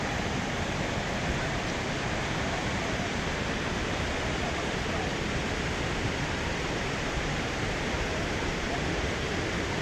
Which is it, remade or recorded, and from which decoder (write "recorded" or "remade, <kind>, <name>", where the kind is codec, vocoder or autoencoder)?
remade, vocoder, BigVGAN v2